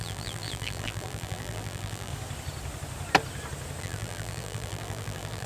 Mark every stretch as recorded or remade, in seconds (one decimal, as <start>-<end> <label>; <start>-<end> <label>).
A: 0.0-2.1 remade; 2.1-3.8 recorded; 3.8-5.5 remade